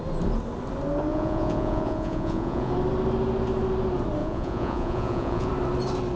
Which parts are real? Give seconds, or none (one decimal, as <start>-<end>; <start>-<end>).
0.0-1.1; 2.7-4.2; 5.5-6.2